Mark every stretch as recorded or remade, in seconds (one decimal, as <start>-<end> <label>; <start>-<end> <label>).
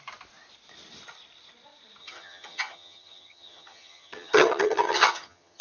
0.0-2.0 recorded; 2.0-5.6 remade